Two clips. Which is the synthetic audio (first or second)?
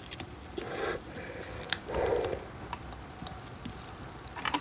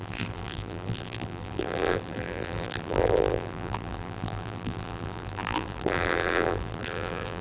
second